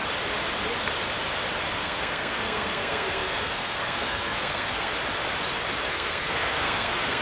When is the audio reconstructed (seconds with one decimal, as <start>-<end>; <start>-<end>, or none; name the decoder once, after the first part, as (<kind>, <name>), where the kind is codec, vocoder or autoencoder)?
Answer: 1.8-4.9 (codec, SNAC); 5.9-7.2